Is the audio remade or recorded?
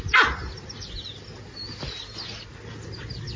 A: recorded